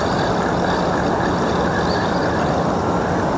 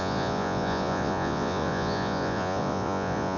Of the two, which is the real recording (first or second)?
first